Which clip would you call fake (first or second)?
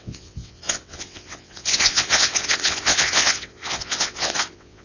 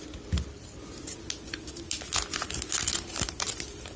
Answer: first